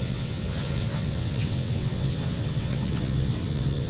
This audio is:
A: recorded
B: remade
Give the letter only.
B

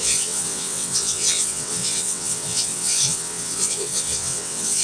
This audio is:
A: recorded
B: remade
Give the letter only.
B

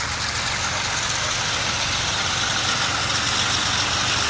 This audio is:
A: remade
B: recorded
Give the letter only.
B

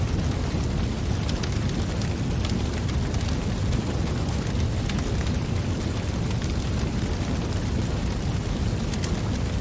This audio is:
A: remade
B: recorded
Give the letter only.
B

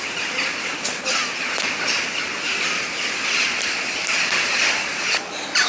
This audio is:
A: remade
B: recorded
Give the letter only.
B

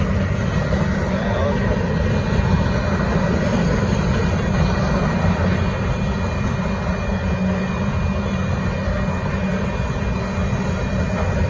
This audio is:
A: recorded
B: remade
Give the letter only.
A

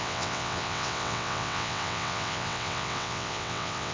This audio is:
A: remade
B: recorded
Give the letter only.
A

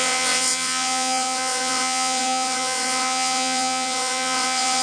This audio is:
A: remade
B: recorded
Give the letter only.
A